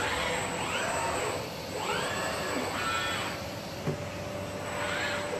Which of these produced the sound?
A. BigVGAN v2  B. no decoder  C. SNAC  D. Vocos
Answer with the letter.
B